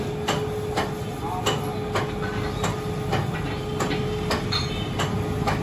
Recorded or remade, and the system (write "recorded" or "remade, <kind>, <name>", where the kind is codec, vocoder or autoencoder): recorded